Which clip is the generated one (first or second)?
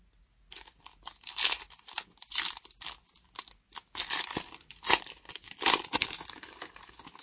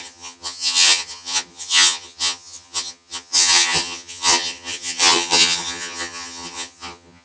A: second